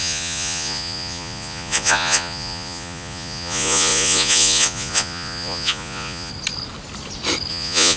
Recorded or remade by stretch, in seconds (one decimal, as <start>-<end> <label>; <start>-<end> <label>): 0.0-6.3 remade; 6.3-7.5 recorded; 7.5-8.0 remade